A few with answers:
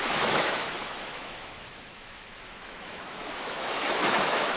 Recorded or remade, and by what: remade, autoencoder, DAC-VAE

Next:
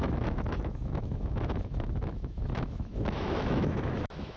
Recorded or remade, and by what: remade, autoencoder, DAC-VAE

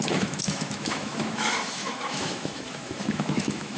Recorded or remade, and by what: remade, autoencoder, DAC-VAE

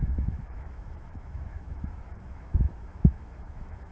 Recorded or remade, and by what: remade, autoencoder, DAC-VAE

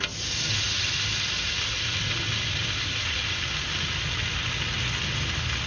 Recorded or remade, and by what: recorded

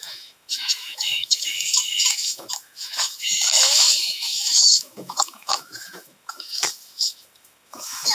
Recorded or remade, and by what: remade, autoencoder, DAC-VAE